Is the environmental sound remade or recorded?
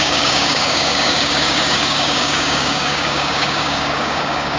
remade